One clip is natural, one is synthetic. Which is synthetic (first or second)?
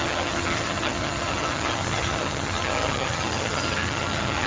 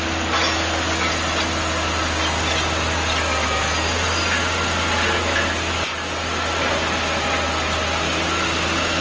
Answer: first